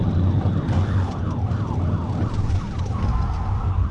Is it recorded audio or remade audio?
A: recorded